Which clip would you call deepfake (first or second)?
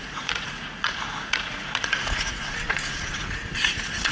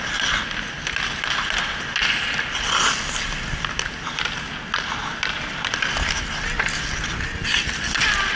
first